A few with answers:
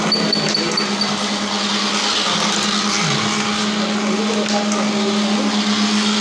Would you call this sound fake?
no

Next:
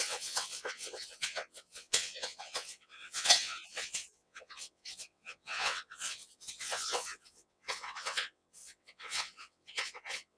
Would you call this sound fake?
yes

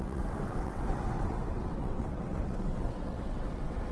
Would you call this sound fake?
yes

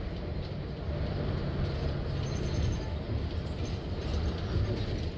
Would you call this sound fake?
no